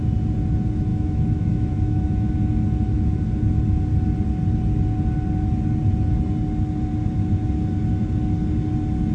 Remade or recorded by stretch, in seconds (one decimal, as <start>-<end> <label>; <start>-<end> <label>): 0.0-0.9 recorded; 0.9-2.3 remade; 2.3-9.1 recorded